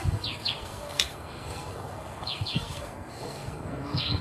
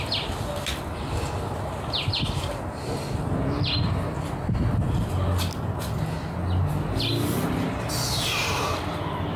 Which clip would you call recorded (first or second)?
second